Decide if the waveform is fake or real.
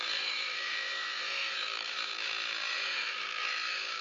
fake